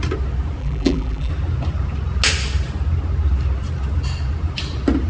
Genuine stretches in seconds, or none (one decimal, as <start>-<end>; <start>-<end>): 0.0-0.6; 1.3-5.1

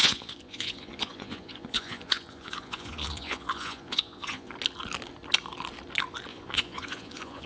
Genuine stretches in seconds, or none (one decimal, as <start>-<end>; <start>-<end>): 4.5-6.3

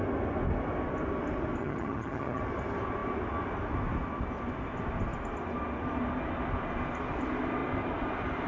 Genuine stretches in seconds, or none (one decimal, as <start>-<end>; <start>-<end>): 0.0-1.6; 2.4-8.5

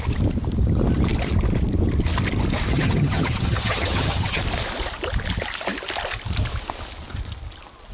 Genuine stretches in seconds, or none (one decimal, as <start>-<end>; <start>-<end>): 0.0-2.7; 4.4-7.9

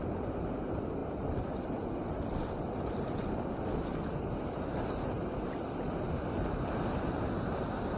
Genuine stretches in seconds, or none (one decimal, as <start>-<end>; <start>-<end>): 0.0-8.0

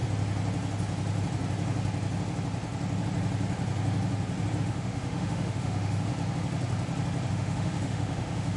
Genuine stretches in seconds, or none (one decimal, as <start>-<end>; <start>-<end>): 0.0-4.6; 6.1-7.3

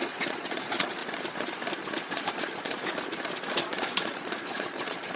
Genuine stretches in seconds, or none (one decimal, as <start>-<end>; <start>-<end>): 1.0-2.1; 2.7-3.5

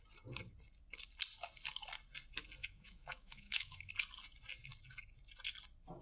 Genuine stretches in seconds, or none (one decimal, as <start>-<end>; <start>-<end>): 0.0-2.6; 3.9-6.0